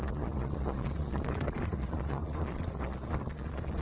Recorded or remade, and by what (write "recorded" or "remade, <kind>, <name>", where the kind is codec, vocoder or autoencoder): remade, vocoder, Vocos